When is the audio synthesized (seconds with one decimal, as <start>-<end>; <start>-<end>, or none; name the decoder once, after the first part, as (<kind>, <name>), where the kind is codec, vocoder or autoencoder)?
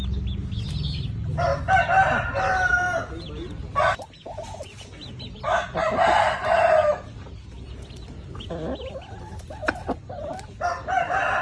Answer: 6.8-8.5 (vocoder, BigVGAN v2)